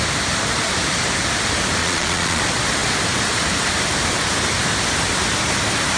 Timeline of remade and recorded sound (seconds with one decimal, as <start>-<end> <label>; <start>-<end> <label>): 0.0-1.8 recorded; 1.8-2.4 remade; 2.4-6.0 recorded